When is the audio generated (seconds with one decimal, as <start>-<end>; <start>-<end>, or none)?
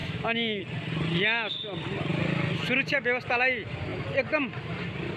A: 0.0-0.6